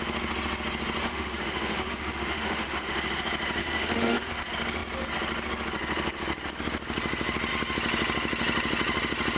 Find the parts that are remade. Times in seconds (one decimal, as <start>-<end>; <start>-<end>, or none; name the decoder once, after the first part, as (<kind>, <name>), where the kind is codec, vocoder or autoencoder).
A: 1.0-3.2 (autoencoder, DAC-VAE); 3.6-4.3

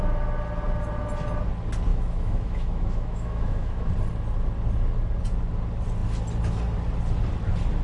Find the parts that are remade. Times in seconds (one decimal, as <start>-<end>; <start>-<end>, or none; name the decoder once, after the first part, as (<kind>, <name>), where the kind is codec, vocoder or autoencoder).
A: 1.9-3.9 (autoencoder, DAC-VAE)